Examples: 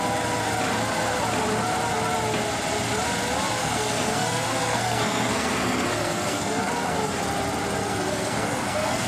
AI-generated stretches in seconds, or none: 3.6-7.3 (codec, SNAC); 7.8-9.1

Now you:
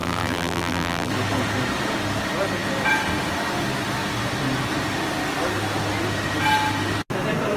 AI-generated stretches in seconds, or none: 0.0-1.1 (vocoder, BigVGAN v2)

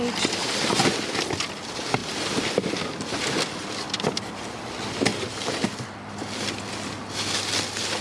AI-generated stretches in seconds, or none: none

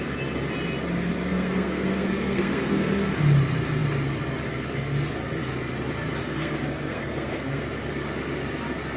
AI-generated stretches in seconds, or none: 1.3-3.1 (codec, SNAC); 6.2-7.6